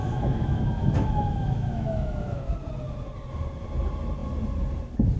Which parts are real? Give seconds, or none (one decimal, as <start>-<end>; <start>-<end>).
2.5-5.2